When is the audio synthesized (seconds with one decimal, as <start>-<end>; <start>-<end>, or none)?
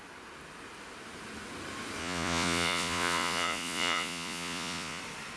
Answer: 2.0-5.0